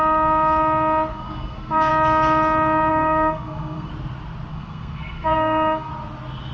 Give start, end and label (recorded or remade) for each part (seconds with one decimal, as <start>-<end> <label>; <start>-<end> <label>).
0.0-1.1 recorded; 1.1-1.9 remade; 1.9-2.9 recorded; 2.9-3.9 remade; 3.9-4.5 recorded; 4.5-5.9 remade; 5.9-6.5 recorded